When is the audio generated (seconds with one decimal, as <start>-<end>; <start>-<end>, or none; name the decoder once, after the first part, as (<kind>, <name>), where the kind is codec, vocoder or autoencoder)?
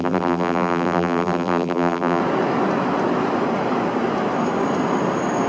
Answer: 0.0-2.2 (vocoder, BigVGAN v2)